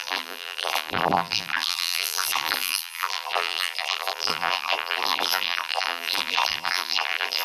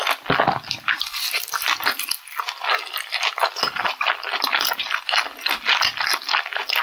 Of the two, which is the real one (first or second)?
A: second